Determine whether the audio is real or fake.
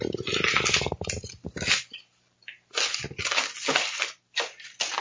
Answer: real